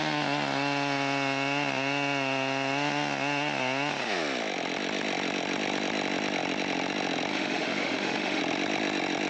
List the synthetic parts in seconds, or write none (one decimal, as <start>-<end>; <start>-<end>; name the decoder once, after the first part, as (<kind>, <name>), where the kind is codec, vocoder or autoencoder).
7.3-8.4 (autoencoder, DAC-VAE)